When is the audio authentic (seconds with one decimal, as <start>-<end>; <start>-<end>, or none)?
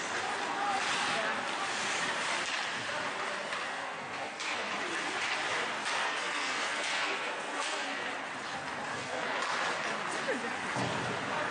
0.0-3.7; 4.7-6.0; 8.1-8.9; 9.4-11.5